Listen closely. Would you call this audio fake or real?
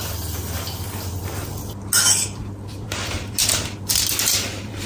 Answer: real